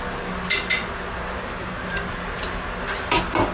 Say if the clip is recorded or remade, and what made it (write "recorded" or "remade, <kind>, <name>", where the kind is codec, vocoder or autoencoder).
recorded